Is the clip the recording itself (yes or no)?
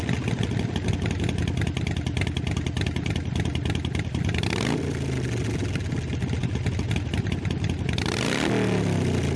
yes